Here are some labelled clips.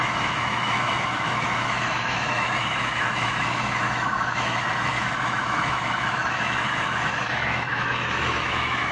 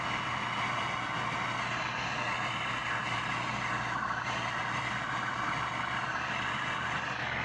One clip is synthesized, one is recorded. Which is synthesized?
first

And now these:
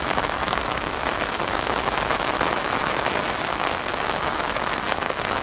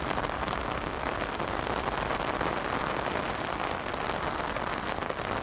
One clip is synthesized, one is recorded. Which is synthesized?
first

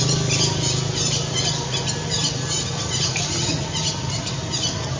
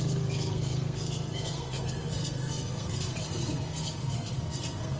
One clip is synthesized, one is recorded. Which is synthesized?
second